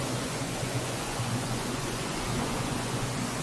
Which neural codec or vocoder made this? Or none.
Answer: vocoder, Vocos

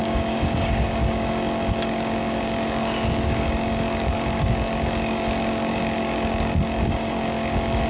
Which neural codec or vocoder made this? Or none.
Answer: codec, DAC